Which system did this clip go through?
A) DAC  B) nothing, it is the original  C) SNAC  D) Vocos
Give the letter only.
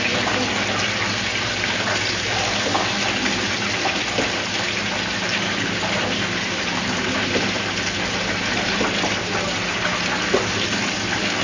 B